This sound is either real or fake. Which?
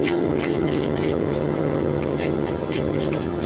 fake